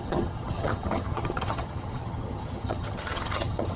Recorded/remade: remade